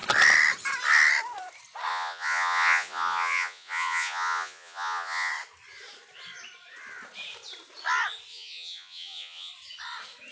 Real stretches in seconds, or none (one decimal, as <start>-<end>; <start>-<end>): 0.0-1.9; 5.3-8.3; 9.5-10.3